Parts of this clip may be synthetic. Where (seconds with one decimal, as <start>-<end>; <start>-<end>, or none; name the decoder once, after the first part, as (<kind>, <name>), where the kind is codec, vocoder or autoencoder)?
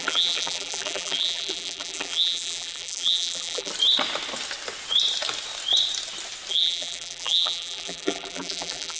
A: 0.0-3.7 (vocoder, BigVGAN v2); 6.5-9.0